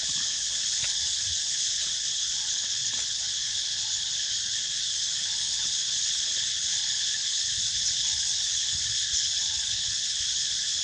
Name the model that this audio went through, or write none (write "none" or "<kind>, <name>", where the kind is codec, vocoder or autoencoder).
codec, HILCodec